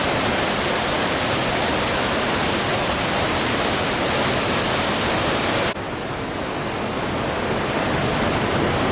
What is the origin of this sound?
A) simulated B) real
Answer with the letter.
B